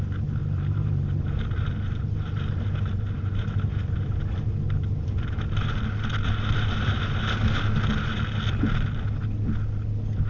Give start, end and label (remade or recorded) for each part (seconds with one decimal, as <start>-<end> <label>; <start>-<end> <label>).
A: 0.0-0.4 recorded; 0.4-5.6 remade; 5.6-10.3 recorded